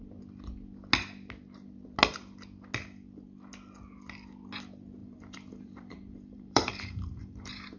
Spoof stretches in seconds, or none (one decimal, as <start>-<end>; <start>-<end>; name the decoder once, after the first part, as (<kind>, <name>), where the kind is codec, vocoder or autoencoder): 5.0-7.8 (vocoder, BigVGAN v2)